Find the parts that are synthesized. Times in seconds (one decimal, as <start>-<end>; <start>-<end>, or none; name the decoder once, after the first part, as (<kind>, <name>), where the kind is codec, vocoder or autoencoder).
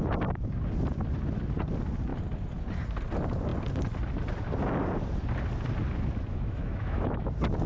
6.3-7.3 (autoencoder, DAC-VAE)